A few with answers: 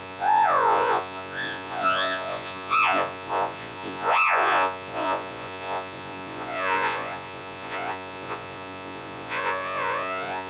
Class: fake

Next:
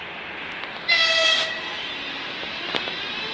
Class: real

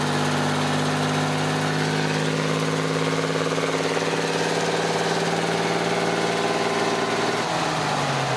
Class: real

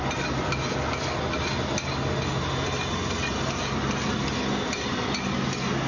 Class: real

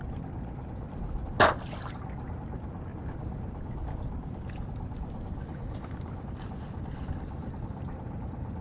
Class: real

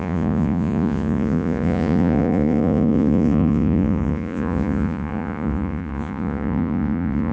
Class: fake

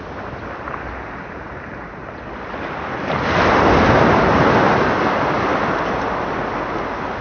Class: real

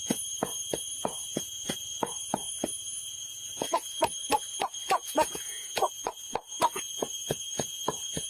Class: fake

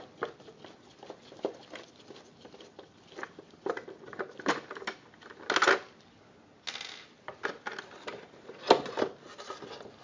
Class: real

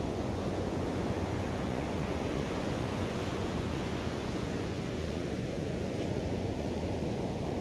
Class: fake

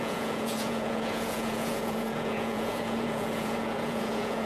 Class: fake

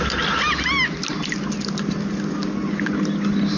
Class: real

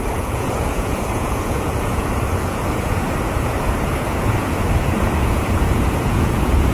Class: fake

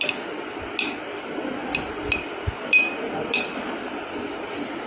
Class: real